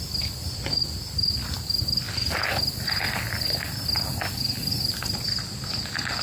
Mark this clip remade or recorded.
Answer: recorded